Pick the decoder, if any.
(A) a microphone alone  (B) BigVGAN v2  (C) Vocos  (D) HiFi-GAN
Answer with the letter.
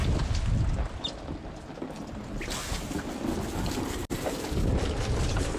A